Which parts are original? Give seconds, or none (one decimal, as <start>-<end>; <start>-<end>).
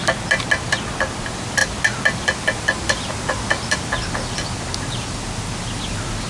0.0-6.3